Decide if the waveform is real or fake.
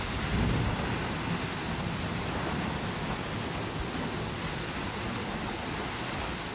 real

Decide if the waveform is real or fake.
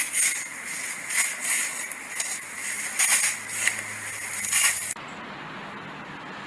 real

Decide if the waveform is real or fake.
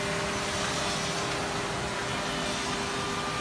real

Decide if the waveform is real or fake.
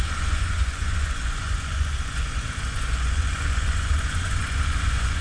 fake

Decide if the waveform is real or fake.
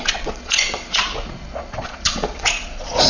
fake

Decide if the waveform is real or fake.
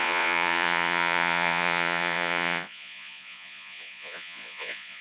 fake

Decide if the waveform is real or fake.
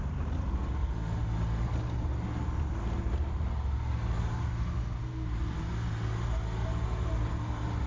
real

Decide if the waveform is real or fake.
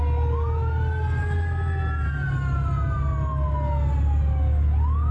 real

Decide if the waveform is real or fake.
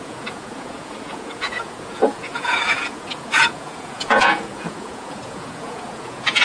fake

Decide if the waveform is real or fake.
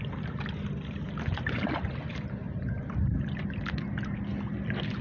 real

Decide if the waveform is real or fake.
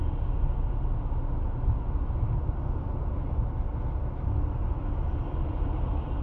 real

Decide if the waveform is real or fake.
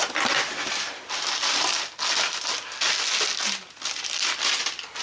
real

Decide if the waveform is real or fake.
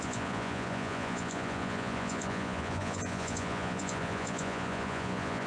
fake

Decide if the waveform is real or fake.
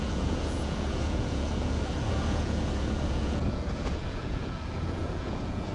fake